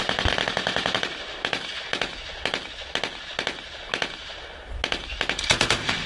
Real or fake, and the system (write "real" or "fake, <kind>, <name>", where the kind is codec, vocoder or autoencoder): real